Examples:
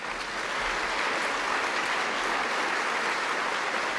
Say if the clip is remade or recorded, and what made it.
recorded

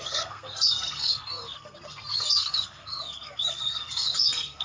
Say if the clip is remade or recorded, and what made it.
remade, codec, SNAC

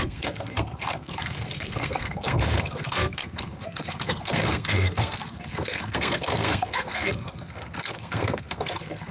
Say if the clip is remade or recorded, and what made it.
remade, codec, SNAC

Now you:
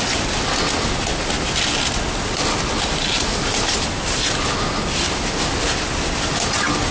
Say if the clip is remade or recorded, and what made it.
recorded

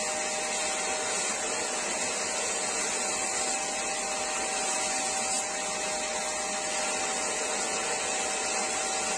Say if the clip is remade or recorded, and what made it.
recorded